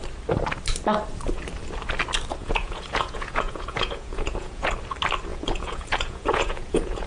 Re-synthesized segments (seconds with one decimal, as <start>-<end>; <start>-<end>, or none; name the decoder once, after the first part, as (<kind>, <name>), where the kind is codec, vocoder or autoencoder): 2.4-4.7 (vocoder, Vocos); 5.3-7.1